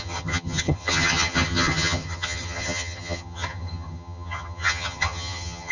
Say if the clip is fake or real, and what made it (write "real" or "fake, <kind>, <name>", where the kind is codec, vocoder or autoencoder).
fake, vocoder, HiFi-GAN